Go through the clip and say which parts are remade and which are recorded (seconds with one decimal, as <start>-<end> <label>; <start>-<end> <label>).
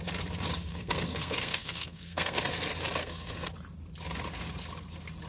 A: 0.0-0.7 recorded; 0.7-2.4 remade; 2.4-3.0 recorded; 3.0-3.5 remade; 3.5-5.3 recorded